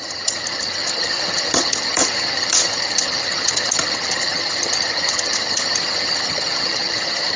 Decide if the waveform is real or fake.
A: fake